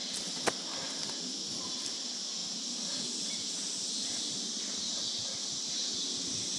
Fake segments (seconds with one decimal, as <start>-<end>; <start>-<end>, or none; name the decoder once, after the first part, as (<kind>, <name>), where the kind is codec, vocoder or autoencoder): none